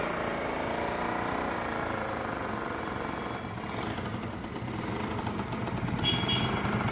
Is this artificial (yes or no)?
no